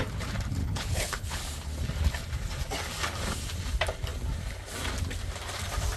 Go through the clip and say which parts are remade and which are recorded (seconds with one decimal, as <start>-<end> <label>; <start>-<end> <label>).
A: 0.0-0.6 recorded; 0.6-1.4 remade; 1.4-6.0 recorded